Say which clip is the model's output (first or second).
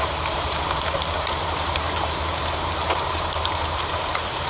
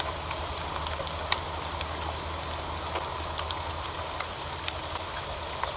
first